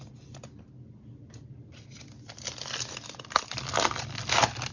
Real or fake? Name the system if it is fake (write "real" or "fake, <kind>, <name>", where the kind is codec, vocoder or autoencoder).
real